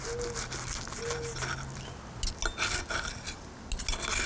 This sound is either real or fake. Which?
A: real